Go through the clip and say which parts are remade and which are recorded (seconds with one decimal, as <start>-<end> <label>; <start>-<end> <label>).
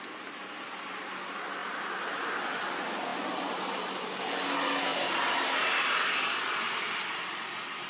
0.0-1.6 recorded; 1.6-2.1 remade; 2.1-3.1 recorded; 3.1-3.9 remade; 3.9-4.9 recorded; 4.9-7.9 remade